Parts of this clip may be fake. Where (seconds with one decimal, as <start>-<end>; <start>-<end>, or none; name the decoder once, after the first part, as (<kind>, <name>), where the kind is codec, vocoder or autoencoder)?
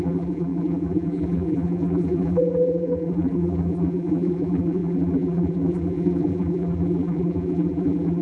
0.0-8.2 (vocoder, BigVGAN v2)